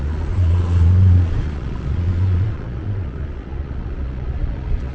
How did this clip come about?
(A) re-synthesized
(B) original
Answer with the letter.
A